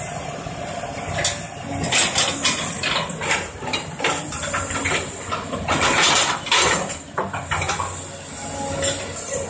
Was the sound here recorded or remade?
recorded